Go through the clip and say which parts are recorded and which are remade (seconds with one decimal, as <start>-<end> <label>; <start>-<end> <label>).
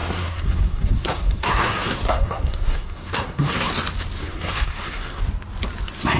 0.0-3.7 remade; 3.7-4.2 recorded; 4.2-5.2 remade; 5.2-6.2 recorded